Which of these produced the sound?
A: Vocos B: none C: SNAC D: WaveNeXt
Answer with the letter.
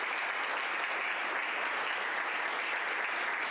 B